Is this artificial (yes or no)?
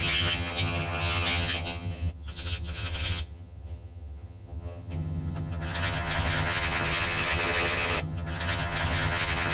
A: yes